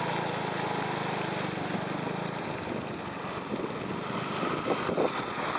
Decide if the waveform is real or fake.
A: real